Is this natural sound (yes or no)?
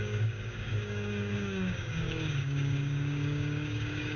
no